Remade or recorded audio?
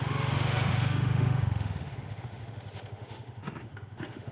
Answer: remade